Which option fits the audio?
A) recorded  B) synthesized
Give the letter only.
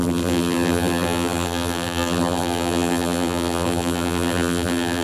B